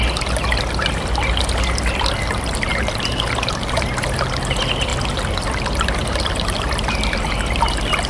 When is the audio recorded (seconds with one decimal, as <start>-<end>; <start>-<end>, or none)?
0.0-8.1